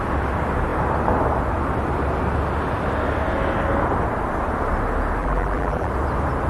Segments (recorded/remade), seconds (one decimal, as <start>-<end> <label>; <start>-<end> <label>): 0.0-5.2 recorded; 5.2-5.9 remade; 5.9-6.5 recorded